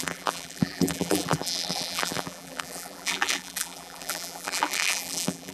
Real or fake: fake